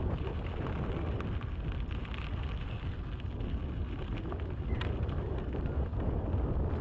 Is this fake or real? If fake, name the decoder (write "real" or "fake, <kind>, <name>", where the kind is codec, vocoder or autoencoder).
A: real